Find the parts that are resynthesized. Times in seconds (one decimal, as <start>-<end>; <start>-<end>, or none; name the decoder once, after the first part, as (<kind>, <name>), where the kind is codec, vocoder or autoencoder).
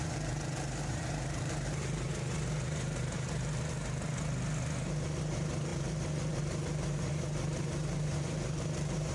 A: 0.0-2.1 (vocoder, BigVGAN v2); 5.2-9.1